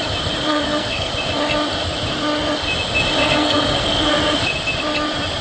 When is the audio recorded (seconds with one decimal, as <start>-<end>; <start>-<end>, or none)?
0.0-0.5; 1.1-3.2; 4.1-5.4